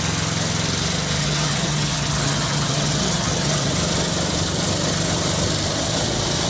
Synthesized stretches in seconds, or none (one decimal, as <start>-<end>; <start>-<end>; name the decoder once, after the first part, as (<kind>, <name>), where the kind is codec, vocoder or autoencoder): 1.2-3.7 (vocoder, HiFi-GAN)